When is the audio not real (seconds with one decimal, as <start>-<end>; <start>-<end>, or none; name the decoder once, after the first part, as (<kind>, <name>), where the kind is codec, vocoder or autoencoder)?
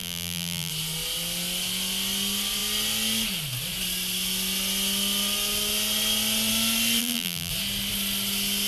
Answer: 0.0-0.7 (vocoder, BigVGAN v2); 7.0-7.5